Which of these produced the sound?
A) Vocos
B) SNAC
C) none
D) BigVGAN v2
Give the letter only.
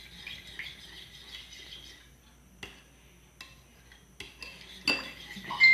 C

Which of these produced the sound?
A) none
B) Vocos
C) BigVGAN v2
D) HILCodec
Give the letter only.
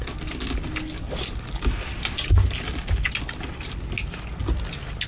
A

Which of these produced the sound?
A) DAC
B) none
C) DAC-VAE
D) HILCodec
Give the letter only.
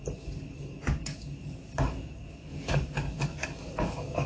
A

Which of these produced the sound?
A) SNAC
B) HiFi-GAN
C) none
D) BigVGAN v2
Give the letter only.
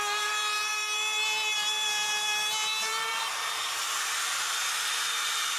D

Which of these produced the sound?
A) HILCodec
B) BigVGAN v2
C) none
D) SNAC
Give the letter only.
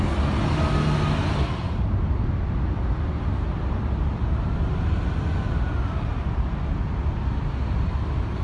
C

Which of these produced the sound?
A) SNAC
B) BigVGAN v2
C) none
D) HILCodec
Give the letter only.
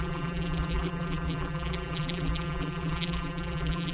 B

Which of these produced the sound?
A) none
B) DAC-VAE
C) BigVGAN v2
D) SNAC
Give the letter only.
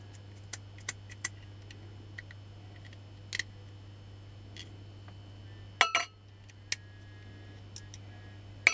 A